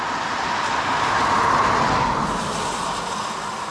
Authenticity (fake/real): real